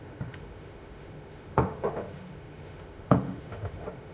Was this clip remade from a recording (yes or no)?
yes